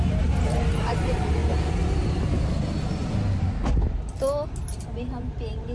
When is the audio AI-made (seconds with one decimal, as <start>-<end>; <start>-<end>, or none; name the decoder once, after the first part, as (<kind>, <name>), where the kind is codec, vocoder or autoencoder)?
0.0-1.4 (vocoder, BigVGAN v2); 4.8-5.7